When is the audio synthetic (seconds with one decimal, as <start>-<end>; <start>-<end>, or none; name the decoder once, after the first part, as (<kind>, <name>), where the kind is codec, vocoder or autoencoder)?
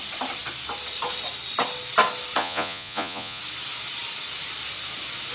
2.4-3.4 (vocoder, Vocos)